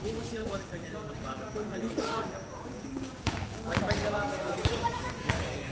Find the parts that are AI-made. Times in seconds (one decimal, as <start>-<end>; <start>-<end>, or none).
0.0-5.7